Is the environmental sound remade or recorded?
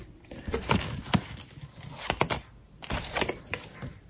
recorded